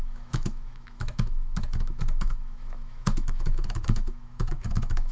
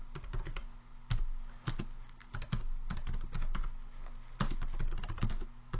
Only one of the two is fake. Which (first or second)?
first